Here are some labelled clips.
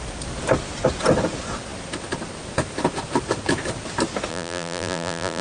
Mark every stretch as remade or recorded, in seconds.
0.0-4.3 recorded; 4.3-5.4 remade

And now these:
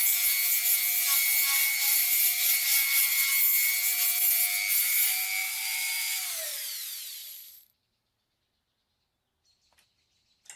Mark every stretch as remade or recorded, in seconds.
0.0-1.6 recorded; 1.6-3.0 remade; 3.0-5.4 recorded; 5.4-8.4 remade; 8.4-10.6 recorded